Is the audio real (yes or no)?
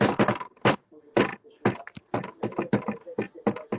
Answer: yes